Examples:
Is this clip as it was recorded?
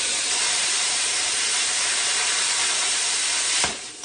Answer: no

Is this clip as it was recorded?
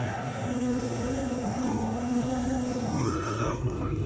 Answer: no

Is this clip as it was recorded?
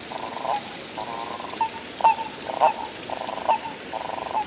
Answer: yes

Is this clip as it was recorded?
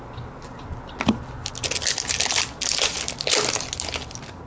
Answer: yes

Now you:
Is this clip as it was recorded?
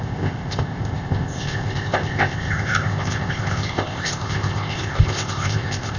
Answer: no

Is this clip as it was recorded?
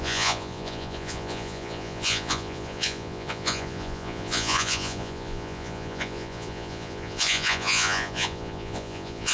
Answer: no